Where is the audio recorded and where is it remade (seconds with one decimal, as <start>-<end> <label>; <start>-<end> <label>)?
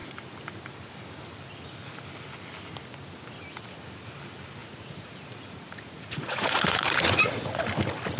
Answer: 0.0-4.6 recorded; 4.6-7.6 remade; 7.6-8.2 recorded